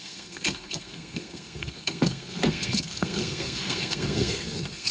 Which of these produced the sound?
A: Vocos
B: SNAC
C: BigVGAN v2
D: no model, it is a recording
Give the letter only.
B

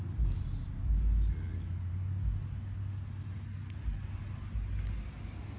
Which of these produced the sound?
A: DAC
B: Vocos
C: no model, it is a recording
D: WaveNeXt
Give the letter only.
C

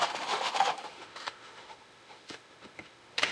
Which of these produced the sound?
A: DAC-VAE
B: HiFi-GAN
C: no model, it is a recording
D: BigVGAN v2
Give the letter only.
A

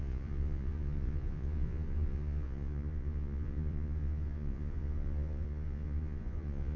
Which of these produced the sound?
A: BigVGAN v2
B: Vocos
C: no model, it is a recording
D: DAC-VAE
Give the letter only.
B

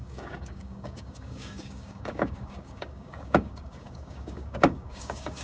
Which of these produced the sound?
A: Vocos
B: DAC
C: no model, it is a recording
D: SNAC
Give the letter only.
B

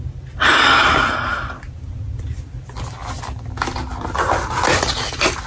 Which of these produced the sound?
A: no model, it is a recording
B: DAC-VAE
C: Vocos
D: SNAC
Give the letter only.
A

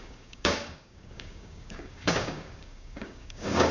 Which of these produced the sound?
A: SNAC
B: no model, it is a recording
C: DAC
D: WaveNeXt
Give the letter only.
C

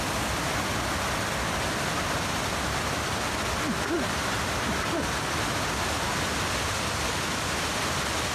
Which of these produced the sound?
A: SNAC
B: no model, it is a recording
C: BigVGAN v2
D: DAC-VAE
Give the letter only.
B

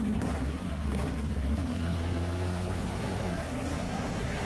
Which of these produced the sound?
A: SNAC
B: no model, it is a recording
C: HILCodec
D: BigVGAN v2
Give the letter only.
A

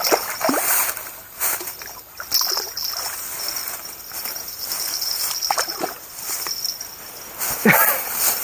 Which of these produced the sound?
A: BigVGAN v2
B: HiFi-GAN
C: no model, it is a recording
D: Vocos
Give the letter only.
C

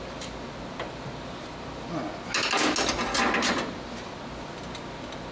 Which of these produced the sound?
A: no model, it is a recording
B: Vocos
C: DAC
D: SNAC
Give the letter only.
A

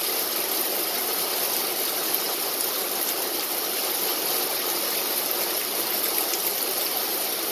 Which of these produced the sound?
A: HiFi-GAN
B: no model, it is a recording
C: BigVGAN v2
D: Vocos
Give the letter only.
B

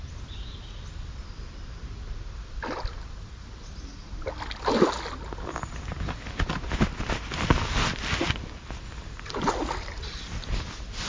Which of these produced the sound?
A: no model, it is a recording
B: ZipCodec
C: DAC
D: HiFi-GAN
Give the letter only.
A